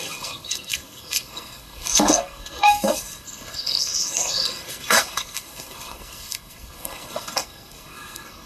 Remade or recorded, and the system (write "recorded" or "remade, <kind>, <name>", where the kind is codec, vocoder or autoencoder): remade, codec, SNAC